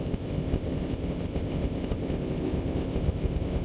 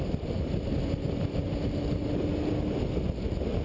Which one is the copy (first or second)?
first